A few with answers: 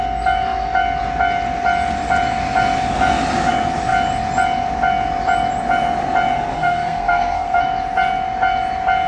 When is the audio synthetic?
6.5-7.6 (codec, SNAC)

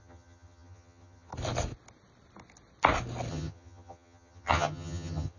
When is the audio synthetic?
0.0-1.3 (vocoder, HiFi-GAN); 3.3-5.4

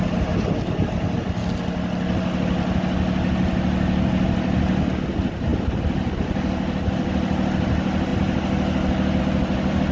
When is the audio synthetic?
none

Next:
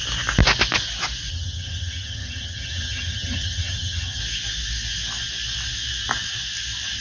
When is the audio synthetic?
1.3-4.2 (vocoder, HiFi-GAN)